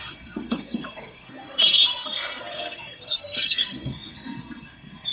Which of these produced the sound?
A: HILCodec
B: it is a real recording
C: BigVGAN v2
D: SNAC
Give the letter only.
D